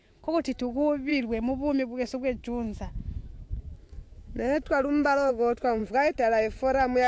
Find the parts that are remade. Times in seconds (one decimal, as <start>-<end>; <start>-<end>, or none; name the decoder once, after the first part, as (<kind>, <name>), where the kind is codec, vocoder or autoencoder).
0.0-5.8 (autoencoder, DAC-VAE)